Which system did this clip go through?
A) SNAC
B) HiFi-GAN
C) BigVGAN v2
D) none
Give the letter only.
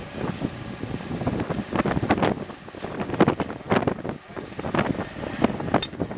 D